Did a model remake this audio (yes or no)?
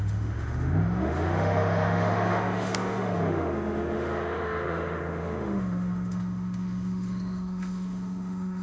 yes